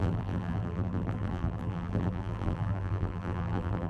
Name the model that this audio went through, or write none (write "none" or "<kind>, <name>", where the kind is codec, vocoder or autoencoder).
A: vocoder, BigVGAN v2